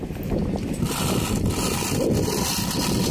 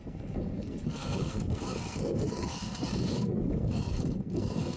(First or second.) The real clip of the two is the first